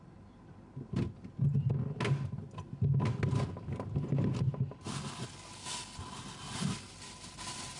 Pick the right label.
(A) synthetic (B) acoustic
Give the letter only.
B